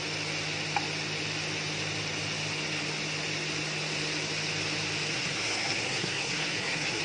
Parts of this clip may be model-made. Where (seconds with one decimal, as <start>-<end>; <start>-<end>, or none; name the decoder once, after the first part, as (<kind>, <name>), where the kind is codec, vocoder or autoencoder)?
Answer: 5.1-7.0 (codec, SNAC)